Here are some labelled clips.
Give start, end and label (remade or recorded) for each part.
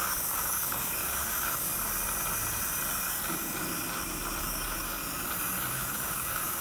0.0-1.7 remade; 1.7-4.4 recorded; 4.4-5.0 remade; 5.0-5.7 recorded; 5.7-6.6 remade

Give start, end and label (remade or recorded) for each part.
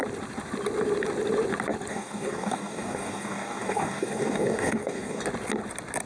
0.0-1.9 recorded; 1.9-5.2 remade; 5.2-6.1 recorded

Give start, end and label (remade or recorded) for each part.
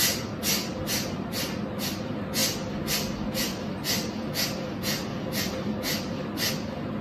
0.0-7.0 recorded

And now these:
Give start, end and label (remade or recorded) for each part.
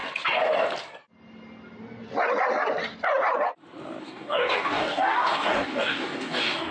0.0-4.0 recorded; 4.0-6.7 remade